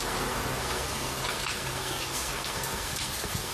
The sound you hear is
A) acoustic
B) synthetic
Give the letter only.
B